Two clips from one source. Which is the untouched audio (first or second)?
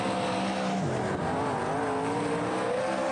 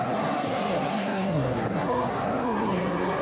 first